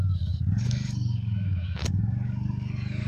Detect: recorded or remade remade